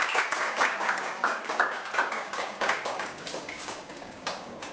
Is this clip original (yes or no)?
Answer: no